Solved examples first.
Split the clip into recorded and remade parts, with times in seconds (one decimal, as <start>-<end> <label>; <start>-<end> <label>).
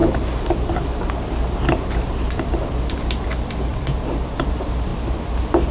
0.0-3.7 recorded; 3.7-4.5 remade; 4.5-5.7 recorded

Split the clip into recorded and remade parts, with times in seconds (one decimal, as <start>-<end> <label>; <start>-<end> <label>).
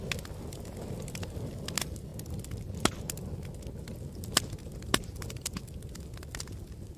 0.0-4.6 recorded; 4.6-5.6 remade; 5.6-7.0 recorded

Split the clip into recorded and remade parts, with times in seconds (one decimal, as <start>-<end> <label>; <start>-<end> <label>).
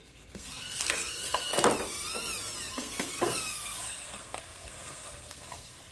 0.0-1.5 remade; 1.5-2.7 recorded; 2.7-5.9 remade